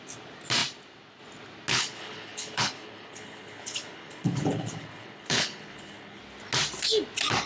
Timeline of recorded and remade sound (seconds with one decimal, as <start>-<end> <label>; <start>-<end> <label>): 0.0-1.7 recorded; 1.7-6.2 remade; 6.2-7.5 recorded